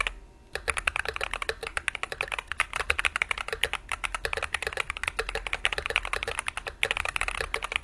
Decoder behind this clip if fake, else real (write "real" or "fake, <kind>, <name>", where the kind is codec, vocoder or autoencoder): real